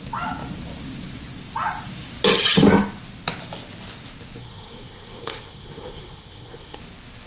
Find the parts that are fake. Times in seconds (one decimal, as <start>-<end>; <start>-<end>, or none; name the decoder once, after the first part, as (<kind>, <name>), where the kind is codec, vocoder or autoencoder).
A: 4.4-6.8 (codec, SNAC)